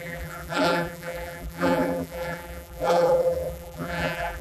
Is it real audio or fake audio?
fake